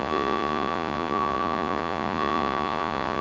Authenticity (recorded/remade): remade